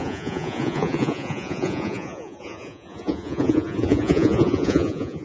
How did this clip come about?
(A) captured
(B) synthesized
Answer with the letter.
B